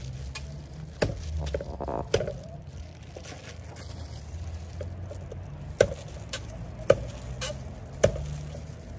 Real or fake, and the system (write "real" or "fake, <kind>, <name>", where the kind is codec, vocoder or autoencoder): real